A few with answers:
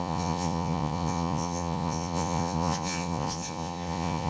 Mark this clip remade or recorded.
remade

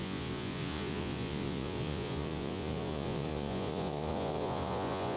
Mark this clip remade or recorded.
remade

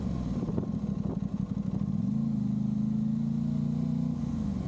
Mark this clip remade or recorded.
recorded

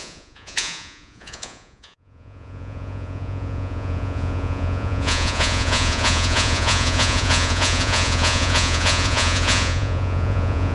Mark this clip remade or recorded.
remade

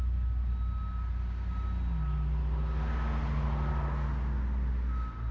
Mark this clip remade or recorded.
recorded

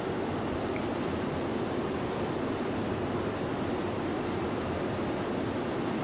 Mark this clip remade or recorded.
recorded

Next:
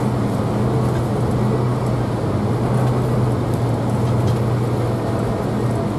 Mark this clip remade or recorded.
recorded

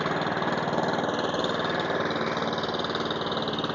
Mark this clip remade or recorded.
recorded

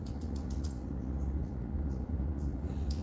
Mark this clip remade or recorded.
remade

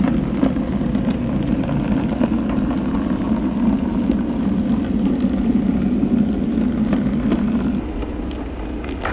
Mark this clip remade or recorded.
recorded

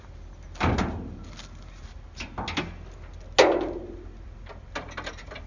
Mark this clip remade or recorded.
recorded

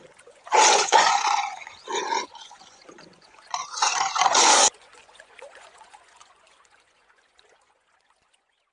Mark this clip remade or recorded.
remade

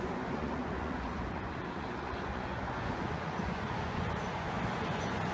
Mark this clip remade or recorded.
remade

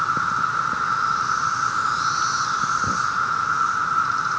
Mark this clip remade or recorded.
recorded